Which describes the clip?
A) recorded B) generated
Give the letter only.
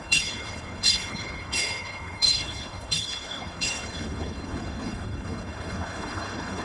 B